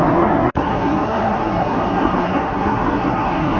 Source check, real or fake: fake